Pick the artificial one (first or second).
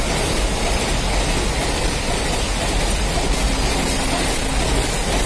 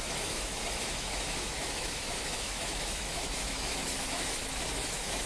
second